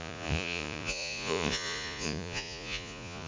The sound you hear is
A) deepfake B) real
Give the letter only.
A